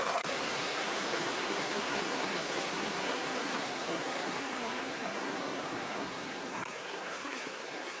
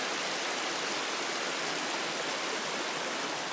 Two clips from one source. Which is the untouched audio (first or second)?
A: second